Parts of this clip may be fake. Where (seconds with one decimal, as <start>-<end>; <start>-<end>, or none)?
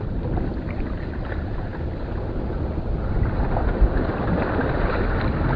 none